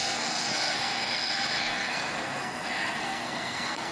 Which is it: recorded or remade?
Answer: remade